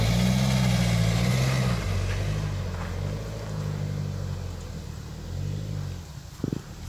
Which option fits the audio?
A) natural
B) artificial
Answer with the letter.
A